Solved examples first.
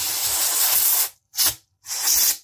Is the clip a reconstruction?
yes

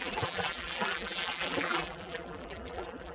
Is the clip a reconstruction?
yes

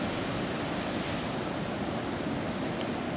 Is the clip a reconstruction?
no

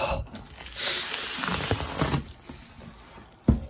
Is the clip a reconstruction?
no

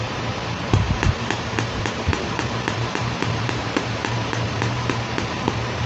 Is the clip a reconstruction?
yes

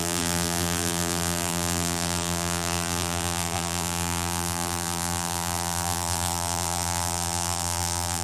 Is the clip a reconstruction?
yes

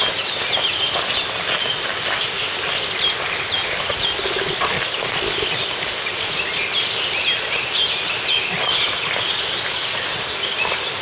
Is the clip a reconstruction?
no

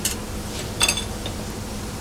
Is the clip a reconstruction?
yes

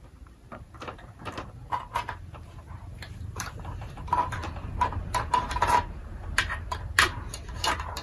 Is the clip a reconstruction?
yes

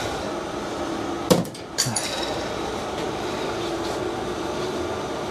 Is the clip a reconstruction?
yes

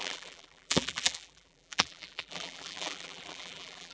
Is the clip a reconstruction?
yes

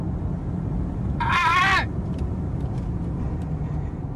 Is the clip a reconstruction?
yes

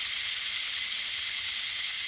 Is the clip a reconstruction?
yes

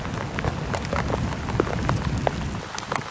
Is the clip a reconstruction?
no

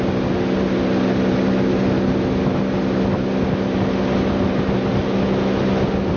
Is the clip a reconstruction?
no